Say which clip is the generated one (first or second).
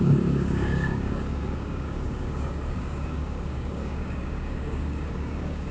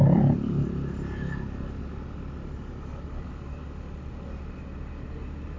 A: first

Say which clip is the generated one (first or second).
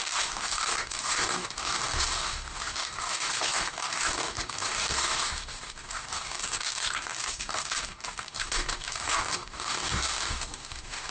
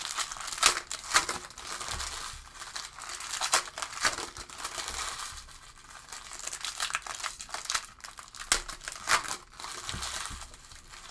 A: first